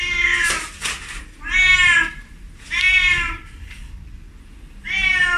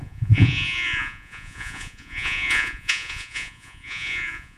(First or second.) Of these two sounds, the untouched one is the first